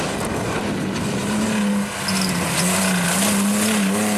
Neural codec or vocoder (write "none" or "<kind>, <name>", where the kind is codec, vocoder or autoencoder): none